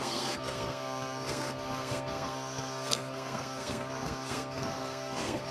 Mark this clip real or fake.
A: fake